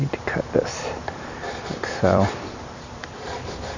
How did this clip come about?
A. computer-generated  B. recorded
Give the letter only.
A